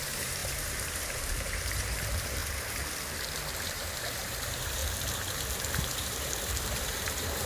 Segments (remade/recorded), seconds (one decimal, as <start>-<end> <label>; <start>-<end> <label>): 0.0-2.4 remade; 2.4-3.7 recorded; 3.7-4.8 remade; 4.8-5.8 recorded; 5.8-7.5 remade